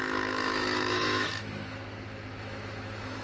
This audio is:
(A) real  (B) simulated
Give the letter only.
B